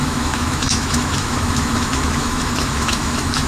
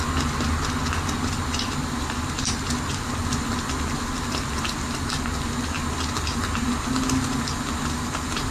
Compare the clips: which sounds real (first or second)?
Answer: second